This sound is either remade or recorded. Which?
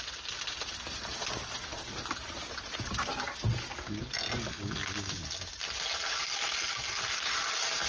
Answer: recorded